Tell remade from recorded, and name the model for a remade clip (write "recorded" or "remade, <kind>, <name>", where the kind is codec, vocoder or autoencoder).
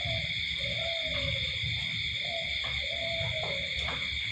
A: recorded